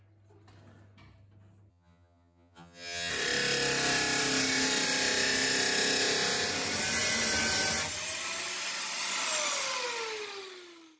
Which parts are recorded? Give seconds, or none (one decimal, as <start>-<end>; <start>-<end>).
0.0-1.7; 3.1-11.0